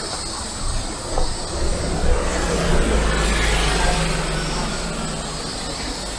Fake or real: real